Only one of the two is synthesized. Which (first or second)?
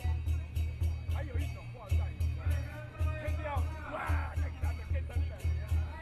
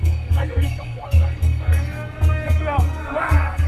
second